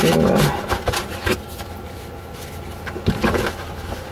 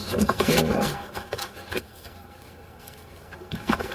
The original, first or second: first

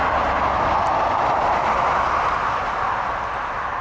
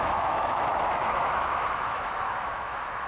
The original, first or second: first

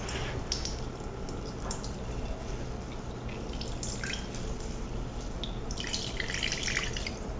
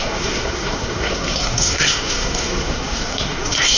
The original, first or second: first